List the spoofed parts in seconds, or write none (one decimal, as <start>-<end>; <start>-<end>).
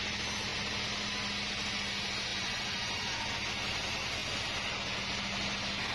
2.3-3.3